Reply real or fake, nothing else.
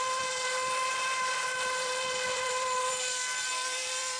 fake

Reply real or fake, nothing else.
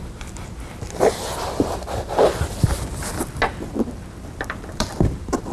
fake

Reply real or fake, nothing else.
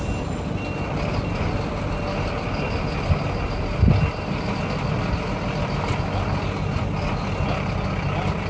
real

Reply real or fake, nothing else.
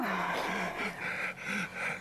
real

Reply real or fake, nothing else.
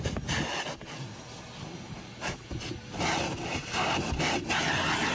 real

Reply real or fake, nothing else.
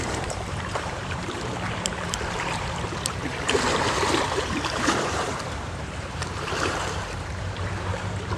fake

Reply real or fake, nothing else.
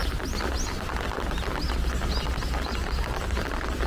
real